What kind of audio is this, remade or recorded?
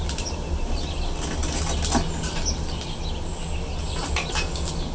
recorded